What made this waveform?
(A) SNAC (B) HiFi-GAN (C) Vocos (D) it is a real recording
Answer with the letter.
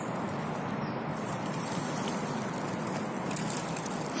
D